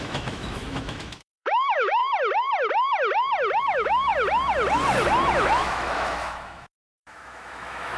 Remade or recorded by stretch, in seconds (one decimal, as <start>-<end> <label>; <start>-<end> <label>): 0.0-2.0 remade; 2.0-3.6 recorded; 3.6-4.1 remade; 4.1-5.4 recorded; 5.4-8.0 remade